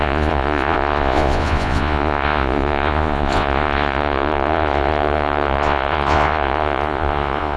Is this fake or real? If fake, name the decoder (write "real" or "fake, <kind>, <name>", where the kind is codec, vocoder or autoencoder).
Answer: fake, vocoder, Vocos